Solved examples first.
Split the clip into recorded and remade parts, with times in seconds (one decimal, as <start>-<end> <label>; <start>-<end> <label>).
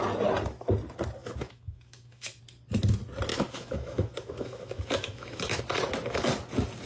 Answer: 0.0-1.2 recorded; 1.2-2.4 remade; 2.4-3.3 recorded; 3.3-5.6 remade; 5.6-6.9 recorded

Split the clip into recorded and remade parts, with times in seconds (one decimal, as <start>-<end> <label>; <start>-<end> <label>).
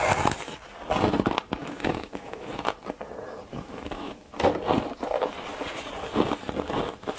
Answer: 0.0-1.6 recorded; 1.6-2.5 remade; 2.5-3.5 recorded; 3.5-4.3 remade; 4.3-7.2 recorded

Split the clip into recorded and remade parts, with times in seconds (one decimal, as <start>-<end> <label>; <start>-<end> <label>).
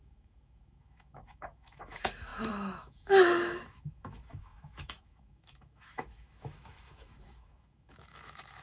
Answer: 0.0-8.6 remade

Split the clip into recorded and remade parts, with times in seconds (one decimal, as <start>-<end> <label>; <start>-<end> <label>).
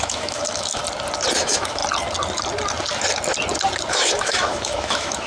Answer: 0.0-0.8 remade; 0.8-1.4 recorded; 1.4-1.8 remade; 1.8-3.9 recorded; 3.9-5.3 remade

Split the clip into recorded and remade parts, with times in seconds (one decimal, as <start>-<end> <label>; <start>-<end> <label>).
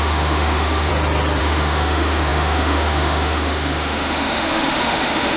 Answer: 0.0-0.9 remade; 0.9-1.4 recorded; 1.4-5.4 remade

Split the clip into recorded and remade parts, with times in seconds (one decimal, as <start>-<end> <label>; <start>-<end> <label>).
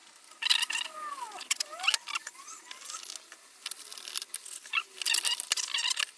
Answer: 0.0-6.2 recorded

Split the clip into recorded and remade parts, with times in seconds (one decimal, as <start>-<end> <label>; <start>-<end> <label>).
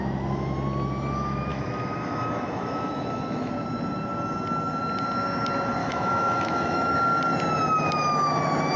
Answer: 0.0-1.5 recorded; 1.5-3.5 remade; 3.5-5.8 recorded; 5.8-6.9 remade; 6.9-8.8 recorded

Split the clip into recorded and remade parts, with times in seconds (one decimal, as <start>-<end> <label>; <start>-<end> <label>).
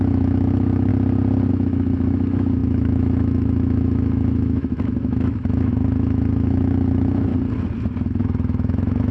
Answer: 0.0-0.9 remade; 0.9-1.5 recorded; 1.5-7.3 remade; 7.3-8.2 recorded; 8.2-9.1 remade